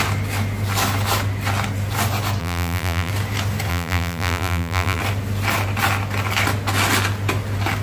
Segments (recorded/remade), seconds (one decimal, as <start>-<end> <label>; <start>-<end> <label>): 0.0-2.4 recorded; 2.4-3.1 remade; 3.1-3.7 recorded; 3.7-5.0 remade; 5.0-7.8 recorded